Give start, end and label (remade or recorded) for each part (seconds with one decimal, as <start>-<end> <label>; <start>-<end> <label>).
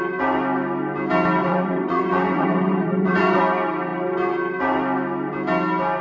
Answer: 0.0-1.4 recorded; 1.4-3.4 remade; 3.4-6.0 recorded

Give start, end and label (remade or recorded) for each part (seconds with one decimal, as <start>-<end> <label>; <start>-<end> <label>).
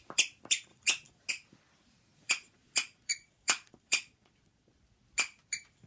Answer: 0.0-0.7 recorded; 0.7-1.3 remade; 1.3-2.1 recorded; 2.1-4.8 remade; 4.8-5.9 recorded